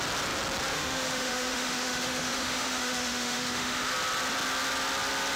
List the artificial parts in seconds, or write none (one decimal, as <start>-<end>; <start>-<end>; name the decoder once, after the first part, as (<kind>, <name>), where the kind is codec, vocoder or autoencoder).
0.7-3.9 (autoencoder, DAC-VAE)